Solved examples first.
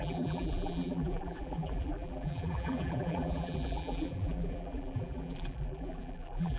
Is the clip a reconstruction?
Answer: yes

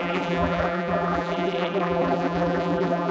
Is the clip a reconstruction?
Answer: yes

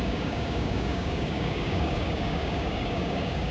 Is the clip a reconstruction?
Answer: yes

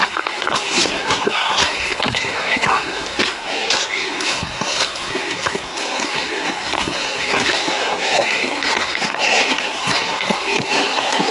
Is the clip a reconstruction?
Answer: yes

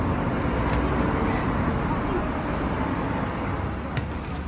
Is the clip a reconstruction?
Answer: no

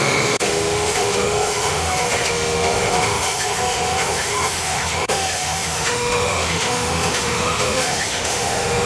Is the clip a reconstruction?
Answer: yes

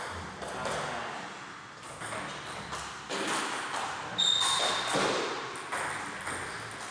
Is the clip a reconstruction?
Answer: no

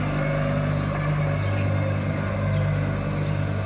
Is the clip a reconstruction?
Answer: no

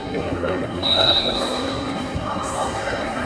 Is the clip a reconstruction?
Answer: yes